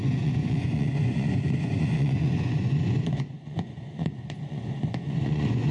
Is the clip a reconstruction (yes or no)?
yes